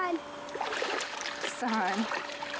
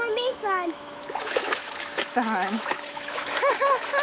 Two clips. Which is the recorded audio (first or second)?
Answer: first